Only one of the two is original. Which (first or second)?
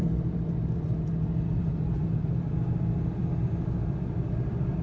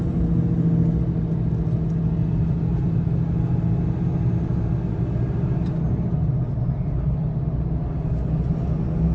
second